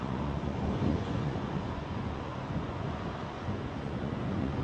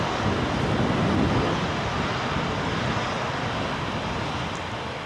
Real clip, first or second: second